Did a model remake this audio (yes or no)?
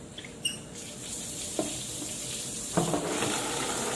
yes